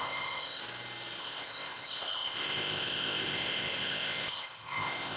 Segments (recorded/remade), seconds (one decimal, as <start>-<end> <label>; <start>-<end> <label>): 0.0-0.6 remade; 0.6-1.2 recorded; 1.2-5.2 remade